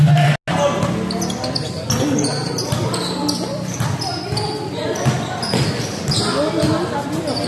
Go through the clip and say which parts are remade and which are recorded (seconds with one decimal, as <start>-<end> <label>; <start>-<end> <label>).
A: 0.0-7.5 recorded